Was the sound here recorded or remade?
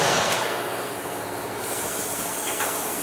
remade